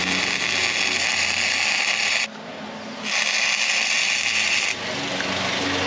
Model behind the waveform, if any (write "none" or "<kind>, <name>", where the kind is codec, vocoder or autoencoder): none